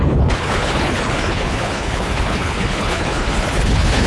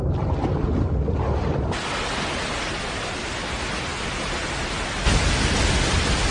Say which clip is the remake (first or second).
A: first